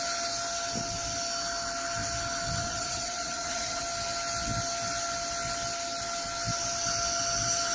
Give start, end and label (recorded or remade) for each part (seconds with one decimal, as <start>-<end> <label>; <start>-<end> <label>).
0.0-2.6 recorded; 2.6-3.8 remade; 3.8-7.7 recorded